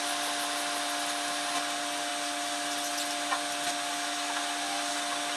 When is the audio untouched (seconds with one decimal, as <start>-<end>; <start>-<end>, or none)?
0.0-5.4